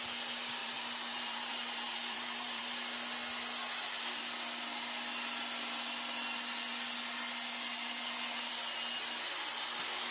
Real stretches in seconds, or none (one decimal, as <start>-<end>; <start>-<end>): 0.0-0.6; 2.6-10.1